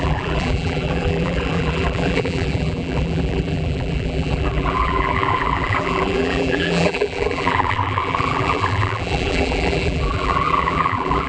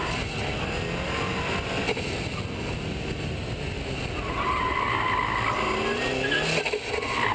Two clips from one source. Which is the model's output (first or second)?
first